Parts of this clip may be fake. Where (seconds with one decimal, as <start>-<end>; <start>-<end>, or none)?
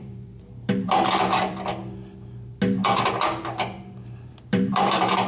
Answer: 0.0-1.7; 4.3-5.3